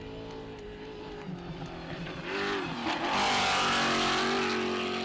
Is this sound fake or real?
real